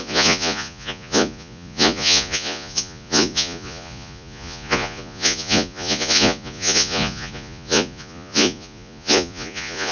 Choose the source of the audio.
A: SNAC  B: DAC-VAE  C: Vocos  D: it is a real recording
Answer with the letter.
C